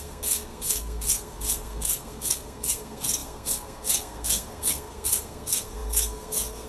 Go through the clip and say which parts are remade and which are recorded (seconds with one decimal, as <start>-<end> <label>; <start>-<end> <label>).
0.0-6.7 remade